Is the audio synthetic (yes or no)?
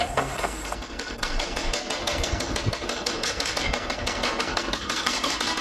yes